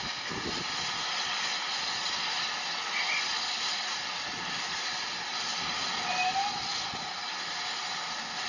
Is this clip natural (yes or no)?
yes